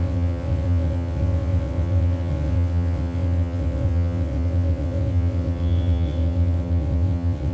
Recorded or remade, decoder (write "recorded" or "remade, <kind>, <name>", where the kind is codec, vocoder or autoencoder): remade, vocoder, WaveNeXt